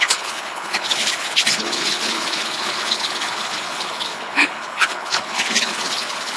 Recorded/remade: remade